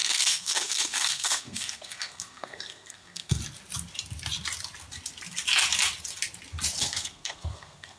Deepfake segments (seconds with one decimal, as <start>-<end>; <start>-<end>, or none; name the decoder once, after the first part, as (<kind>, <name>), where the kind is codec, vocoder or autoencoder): 0.0-3.4 (codec, SNAC); 6.8-8.0